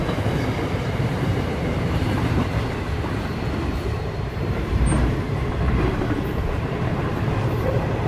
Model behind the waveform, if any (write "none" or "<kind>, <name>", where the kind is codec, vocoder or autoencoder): vocoder, BigVGAN v2